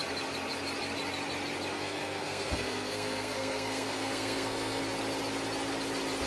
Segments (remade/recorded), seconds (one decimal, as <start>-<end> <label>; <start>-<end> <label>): 0.0-1.7 recorded; 1.7-4.8 remade; 4.8-6.3 recorded